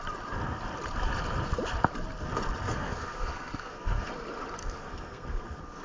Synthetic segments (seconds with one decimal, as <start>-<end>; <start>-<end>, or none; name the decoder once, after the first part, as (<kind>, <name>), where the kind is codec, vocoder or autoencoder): 2.7-4.1 (codec, SNAC); 4.6-5.8

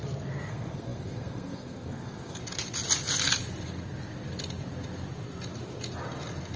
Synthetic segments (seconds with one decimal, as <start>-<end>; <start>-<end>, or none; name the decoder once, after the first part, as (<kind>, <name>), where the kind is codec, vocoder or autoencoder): 0.5-2.4 (codec, SNAC)

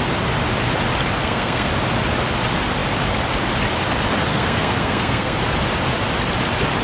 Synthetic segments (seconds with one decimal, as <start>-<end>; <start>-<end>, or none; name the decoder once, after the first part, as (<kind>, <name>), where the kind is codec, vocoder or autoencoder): 1.2-1.7 (codec, SNAC); 4.3-5.4

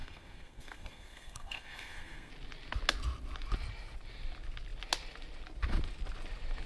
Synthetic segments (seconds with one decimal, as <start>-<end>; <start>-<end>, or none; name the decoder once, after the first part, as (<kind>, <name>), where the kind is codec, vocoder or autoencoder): 0.0-2.3 (codec, SNAC)

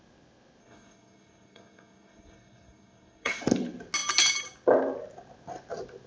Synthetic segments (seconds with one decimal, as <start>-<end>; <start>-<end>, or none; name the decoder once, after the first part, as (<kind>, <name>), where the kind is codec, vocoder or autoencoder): 0.6-3.4 (codec, SNAC)

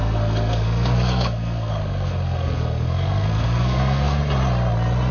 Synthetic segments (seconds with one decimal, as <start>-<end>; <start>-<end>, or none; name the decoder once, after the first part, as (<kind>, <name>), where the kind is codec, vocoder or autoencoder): 0.0-4.2 (codec, SNAC)

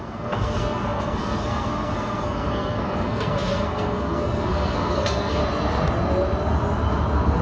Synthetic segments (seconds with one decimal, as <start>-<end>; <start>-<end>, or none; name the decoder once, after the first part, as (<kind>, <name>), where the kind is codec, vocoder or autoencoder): 0.0-5.4 (codec, SNAC)